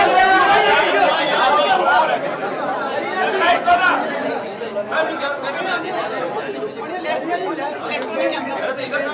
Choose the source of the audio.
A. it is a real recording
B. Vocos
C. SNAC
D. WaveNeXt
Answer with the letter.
A